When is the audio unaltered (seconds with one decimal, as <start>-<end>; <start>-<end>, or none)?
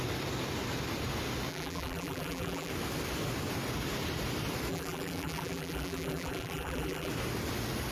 0.0-1.5; 2.7-4.7; 7.1-7.9